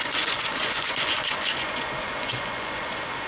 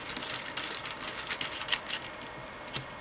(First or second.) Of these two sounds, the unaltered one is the second